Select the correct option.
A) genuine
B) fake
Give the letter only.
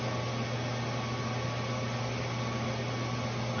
A